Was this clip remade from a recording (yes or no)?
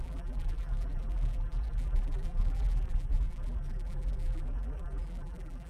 yes